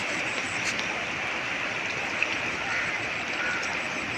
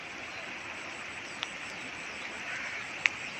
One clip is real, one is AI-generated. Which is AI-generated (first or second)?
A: first